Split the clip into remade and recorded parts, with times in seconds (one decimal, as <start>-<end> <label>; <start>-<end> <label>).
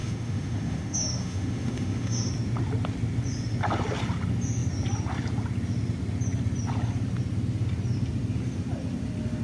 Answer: 0.0-2.3 remade; 2.3-9.4 recorded